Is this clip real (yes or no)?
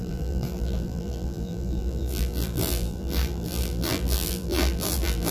no